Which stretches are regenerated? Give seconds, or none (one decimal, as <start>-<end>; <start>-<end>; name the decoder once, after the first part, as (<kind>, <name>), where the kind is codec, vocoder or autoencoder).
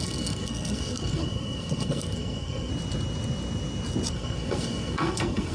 0.0-2.7 (codec, SNAC); 4.1-5.5